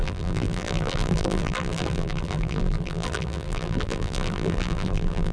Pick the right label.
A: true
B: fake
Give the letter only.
B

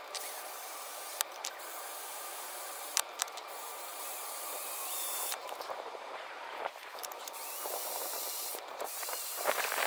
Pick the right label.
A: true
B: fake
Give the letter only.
B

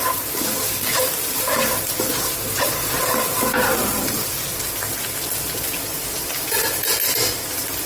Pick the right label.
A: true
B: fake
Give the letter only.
B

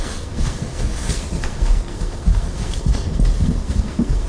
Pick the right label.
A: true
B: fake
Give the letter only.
B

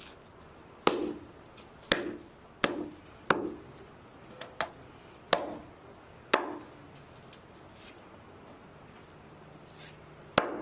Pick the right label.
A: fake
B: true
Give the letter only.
B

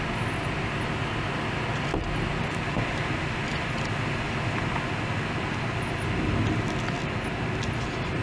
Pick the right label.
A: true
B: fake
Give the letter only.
A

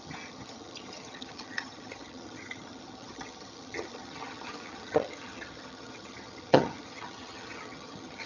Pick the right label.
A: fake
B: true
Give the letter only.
A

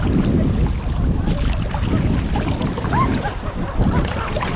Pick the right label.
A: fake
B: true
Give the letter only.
B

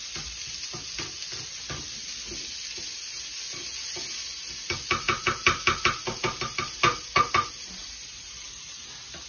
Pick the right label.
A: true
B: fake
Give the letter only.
A